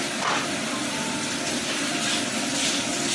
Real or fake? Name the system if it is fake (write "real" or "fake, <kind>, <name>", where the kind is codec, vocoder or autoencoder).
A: real